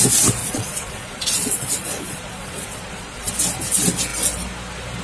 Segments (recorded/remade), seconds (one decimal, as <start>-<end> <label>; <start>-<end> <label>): 0.0-0.4 recorded; 0.4-3.3 remade; 3.3-5.0 recorded